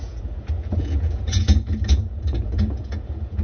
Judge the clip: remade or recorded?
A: remade